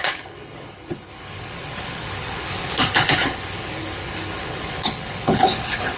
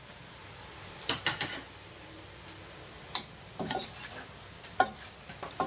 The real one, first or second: second